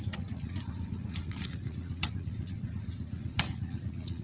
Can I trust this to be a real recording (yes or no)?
no